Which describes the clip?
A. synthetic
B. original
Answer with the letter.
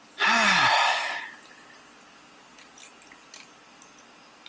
B